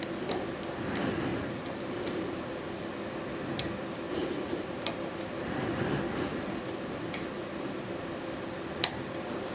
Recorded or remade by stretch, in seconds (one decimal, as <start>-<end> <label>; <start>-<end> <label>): 0.0-1.3 recorded; 1.3-2.9 remade; 2.9-4.2 recorded; 4.2-4.9 remade; 4.9-6.3 recorded; 6.3-8.0 remade; 8.0-9.5 recorded